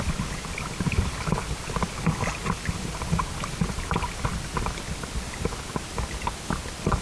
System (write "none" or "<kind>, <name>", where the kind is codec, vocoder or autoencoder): none